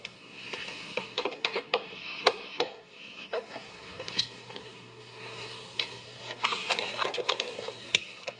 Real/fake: fake